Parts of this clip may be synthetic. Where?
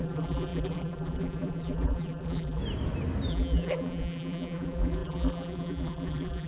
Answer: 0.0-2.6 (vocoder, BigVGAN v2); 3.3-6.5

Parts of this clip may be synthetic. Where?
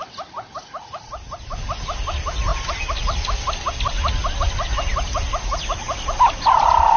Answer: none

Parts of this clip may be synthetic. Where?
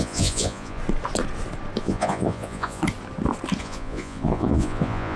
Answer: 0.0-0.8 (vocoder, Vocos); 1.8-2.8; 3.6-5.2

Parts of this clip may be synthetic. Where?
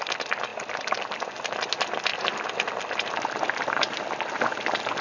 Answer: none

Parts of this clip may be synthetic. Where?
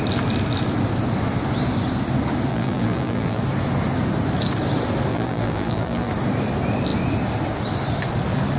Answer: 2.5-3.4 (vocoder, BigVGAN v2); 5.1-6.1